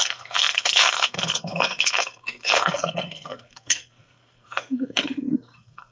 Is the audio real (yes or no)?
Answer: no